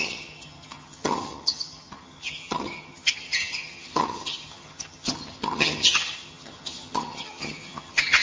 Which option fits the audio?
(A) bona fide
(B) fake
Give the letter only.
B